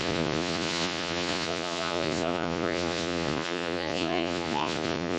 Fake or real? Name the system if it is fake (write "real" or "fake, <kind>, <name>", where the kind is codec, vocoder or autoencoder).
fake, vocoder, Vocos